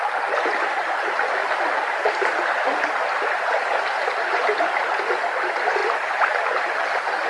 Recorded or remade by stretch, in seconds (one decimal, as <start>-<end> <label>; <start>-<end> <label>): 0.0-7.3 recorded